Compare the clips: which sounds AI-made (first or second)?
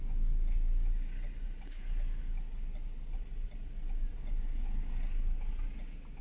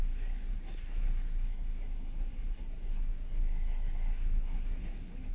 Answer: second